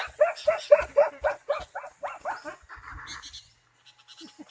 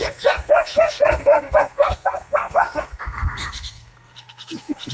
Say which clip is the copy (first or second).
second